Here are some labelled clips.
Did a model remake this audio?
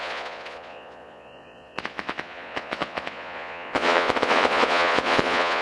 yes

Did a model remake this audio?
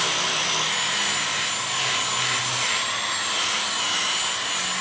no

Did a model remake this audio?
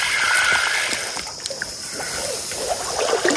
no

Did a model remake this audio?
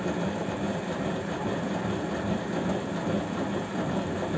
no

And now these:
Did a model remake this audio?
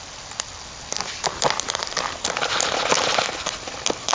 no